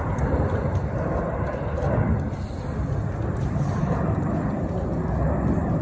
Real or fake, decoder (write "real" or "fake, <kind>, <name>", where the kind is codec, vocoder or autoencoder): fake, vocoder, BigVGAN v2